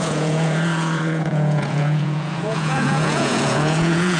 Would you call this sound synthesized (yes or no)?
yes